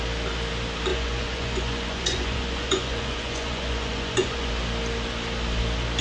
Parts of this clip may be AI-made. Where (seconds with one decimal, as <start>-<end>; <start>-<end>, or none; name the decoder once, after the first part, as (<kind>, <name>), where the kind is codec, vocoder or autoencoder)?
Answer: 0.9-4.5 (vocoder, Vocos)